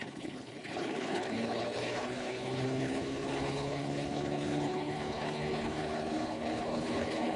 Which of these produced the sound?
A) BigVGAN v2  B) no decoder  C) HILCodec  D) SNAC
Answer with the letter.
C